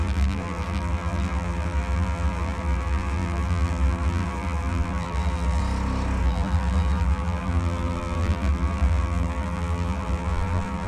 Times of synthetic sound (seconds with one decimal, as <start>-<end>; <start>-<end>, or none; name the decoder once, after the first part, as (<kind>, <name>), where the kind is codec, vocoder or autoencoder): 0.0-5.6 (vocoder, BigVGAN v2); 6.2-10.9